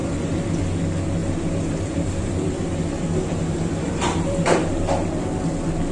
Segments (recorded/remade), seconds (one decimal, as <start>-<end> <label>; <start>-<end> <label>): 0.0-0.6 remade; 0.6-1.2 recorded; 1.2-4.7 remade; 4.7-5.9 recorded